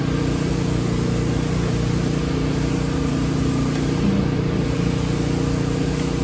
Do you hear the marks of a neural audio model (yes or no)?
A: no